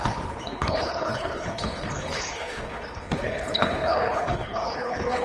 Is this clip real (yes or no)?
no